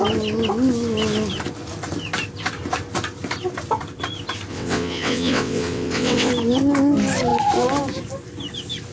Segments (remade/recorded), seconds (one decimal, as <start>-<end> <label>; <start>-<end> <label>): 0.0-4.5 recorded; 4.5-6.3 remade; 6.3-8.9 recorded